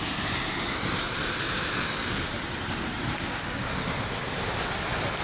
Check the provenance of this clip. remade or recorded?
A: recorded